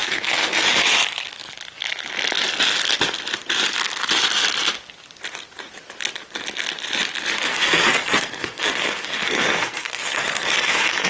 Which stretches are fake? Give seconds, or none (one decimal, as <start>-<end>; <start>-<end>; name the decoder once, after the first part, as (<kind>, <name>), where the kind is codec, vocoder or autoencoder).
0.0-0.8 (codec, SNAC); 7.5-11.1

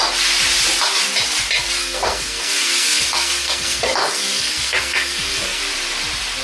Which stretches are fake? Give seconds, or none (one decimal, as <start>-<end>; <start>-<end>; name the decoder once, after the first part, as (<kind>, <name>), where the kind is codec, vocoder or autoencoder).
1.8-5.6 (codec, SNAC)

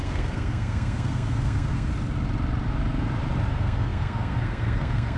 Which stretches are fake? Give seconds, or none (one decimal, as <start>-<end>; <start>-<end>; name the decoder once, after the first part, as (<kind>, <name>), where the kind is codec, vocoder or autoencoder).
0.0-1.9 (codec, SNAC); 3.5-5.2